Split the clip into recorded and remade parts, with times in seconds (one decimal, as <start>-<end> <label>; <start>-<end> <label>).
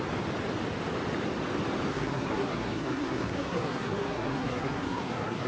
0.0-1.9 recorded; 1.9-5.5 remade